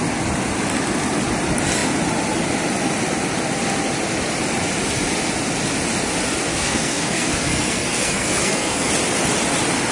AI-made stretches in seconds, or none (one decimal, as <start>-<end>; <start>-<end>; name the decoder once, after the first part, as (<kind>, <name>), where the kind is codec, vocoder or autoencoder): 6.5-8.9 (codec, SNAC)